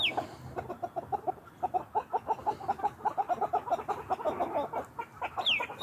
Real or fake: real